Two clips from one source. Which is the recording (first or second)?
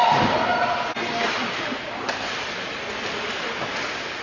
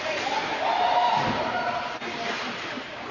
first